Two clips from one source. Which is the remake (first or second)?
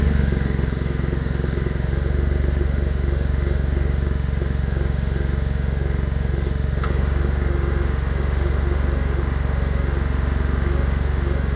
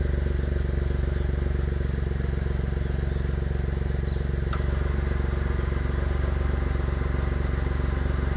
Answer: first